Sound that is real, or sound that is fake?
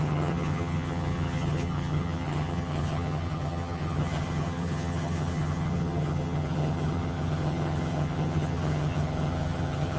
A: fake